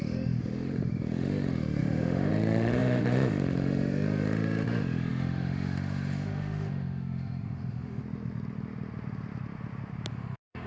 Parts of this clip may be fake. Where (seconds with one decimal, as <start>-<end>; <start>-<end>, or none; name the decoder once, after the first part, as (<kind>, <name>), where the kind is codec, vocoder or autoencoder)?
0.0-8.0 (autoencoder, DAC-VAE); 10.1-10.7